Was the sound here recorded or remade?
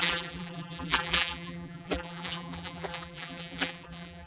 remade